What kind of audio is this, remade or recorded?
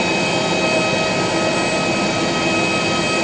recorded